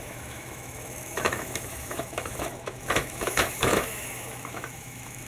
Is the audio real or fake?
fake